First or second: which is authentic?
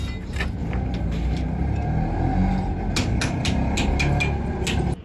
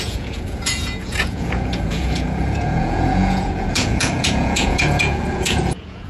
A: first